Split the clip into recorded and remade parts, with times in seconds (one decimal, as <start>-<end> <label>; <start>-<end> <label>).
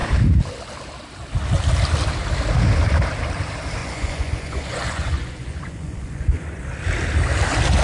0.0-3.8 recorded; 3.8-6.6 remade; 6.6-7.8 recorded